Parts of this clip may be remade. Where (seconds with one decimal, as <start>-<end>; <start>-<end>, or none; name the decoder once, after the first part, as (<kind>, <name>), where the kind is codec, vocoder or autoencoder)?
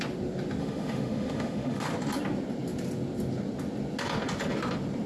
0.6-1.9 (autoencoder, DAC-VAE)